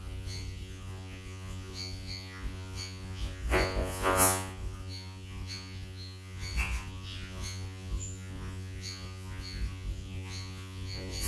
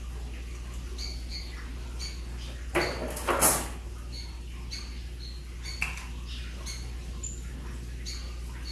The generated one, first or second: first